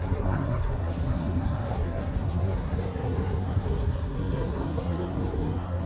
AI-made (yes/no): yes